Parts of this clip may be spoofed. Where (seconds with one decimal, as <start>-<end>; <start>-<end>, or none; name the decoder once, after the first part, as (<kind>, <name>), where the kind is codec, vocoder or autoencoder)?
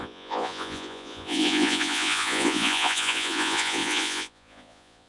0.0-5.1 (vocoder, Vocos)